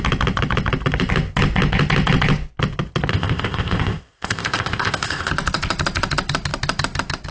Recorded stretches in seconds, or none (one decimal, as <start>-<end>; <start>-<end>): 0.0-3.1; 5.3-7.3